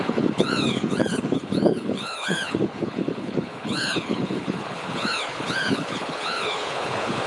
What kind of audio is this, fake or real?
fake